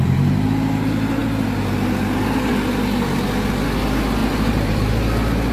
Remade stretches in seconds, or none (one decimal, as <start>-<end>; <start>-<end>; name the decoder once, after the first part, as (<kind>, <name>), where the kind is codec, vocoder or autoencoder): 4.2-4.8 (vocoder, BigVGAN v2)